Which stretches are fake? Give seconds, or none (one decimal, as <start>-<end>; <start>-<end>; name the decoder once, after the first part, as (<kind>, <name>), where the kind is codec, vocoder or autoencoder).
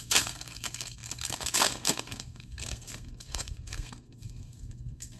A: 0.0-5.2 (codec, SNAC)